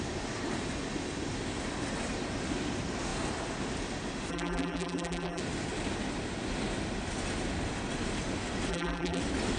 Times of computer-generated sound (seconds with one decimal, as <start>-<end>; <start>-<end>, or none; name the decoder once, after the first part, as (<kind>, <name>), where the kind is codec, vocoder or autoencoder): 4.3-5.4 (vocoder, BigVGAN v2); 8.7-9.2